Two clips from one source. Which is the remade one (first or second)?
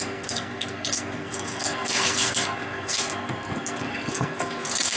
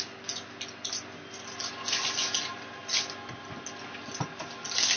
first